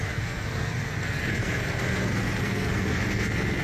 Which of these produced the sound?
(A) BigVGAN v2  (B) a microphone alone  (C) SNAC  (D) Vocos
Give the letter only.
C